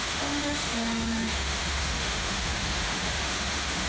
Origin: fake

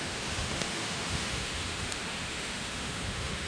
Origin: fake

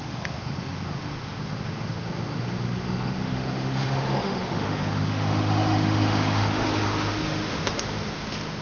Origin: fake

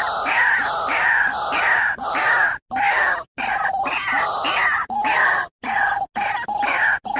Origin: real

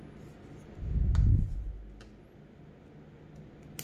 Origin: real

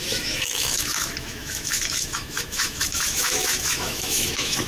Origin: fake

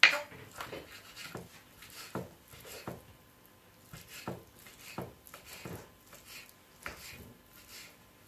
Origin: real